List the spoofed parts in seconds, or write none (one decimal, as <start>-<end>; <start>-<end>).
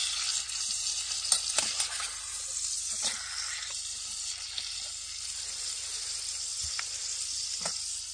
none